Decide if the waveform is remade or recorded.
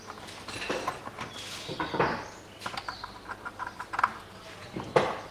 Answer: recorded